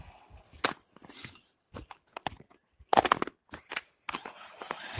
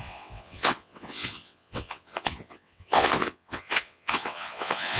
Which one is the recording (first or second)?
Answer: first